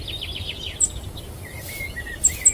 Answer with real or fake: real